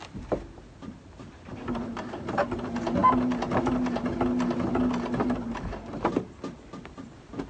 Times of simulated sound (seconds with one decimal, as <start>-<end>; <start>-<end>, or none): none